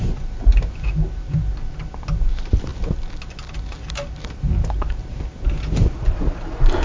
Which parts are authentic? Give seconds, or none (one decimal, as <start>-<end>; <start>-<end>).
0.0-6.8